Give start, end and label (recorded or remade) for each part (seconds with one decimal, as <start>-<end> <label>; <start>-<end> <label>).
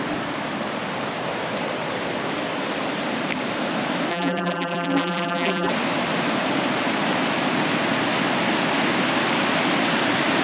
0.0-4.1 recorded; 4.1-5.7 remade; 5.7-10.4 recorded